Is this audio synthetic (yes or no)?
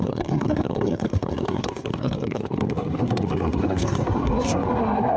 yes